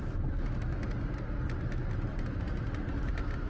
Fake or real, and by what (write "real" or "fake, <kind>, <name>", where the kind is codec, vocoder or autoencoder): real